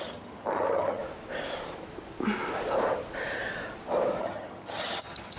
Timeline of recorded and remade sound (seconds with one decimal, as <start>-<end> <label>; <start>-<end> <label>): 0.0-1.0 remade; 1.0-4.2 recorded; 4.2-5.4 remade